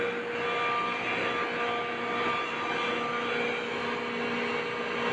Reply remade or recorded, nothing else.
recorded